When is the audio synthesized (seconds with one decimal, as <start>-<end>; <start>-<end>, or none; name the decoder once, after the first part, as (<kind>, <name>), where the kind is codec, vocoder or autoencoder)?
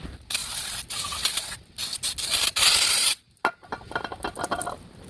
none